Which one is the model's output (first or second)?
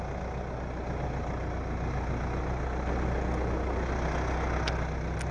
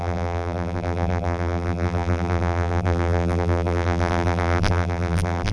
second